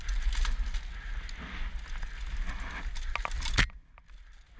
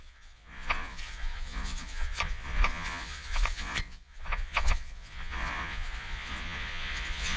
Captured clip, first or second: first